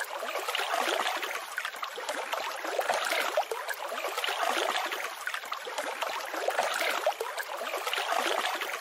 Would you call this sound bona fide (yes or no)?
yes